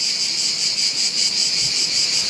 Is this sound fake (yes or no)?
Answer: no